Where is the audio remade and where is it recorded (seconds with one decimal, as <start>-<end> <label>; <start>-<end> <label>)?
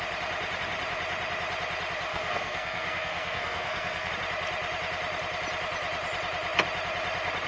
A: 0.0-2.1 recorded; 2.1-4.1 remade; 4.1-7.5 recorded